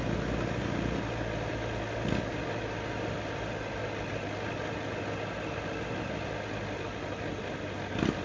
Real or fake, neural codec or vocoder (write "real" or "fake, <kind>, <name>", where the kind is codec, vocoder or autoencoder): real